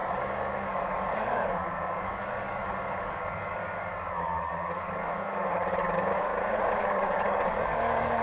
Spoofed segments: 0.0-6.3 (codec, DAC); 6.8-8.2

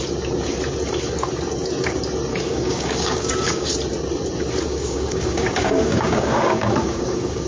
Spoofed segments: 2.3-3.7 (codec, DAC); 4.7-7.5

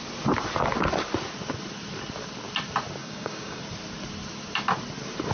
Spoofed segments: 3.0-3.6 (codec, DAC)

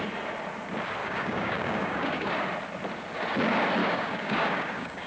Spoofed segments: 1.0-2.3 (codec, DAC); 3.8-5.1